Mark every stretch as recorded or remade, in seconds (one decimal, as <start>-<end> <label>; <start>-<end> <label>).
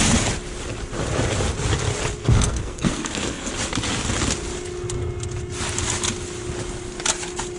0.0-2.2 recorded; 2.2-3.5 remade; 3.5-7.6 recorded